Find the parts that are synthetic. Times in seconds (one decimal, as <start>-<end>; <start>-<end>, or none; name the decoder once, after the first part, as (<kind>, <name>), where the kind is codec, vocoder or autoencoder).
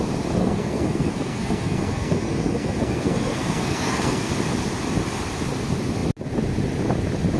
0.4-4.3 (codec, SNAC)